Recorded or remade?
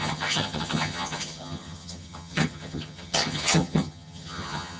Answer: remade